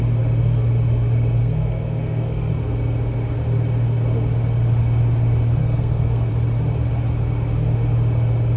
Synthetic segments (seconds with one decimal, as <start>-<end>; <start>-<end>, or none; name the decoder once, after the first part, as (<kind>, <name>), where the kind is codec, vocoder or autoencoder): 1.4-2.5 (codec, SNAC); 5.6-6.3